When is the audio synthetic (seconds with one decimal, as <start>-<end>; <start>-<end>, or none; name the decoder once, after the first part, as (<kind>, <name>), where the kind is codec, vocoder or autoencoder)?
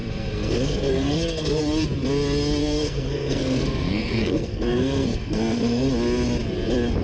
0.0-1.6 (codec, SNAC); 2.6-5.9